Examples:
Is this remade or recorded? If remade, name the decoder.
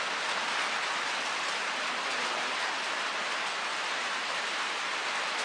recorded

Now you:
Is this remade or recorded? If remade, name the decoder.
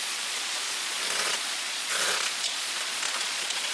remade, vocoder, Vocos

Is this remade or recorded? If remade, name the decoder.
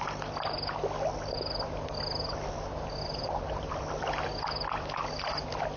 recorded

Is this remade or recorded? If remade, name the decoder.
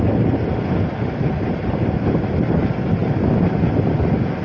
recorded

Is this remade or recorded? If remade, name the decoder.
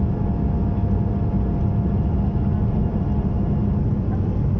recorded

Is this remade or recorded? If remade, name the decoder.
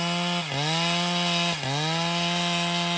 recorded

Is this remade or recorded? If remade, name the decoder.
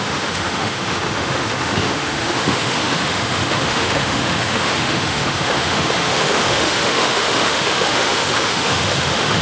remade, autoencoder, DAC-VAE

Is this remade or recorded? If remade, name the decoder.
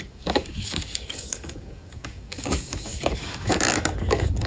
remade, codec, DAC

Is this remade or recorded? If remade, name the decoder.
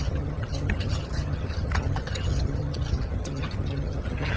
remade, vocoder, HiFi-GAN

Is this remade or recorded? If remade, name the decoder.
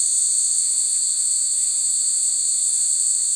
remade, vocoder, Vocos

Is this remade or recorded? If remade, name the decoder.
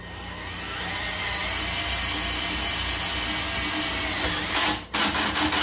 recorded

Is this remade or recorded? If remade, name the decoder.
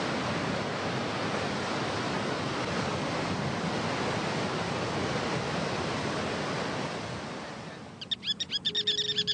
recorded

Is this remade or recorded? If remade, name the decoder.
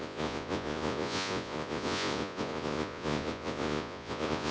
remade, vocoder, Vocos